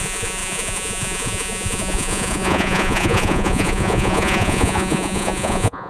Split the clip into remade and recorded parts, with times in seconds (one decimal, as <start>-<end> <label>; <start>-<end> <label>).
0.0-5.9 remade